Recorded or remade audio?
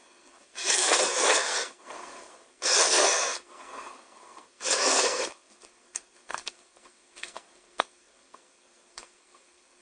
remade